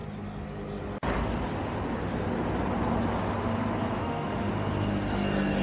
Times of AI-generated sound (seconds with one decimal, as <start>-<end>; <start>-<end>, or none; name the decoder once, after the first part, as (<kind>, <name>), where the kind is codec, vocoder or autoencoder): 4.0-4.5 (autoencoder, DAC-VAE)